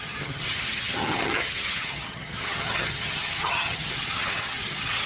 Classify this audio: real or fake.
fake